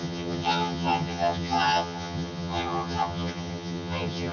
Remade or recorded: remade